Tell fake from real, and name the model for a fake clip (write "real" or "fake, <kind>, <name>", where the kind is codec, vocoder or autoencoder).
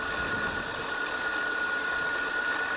real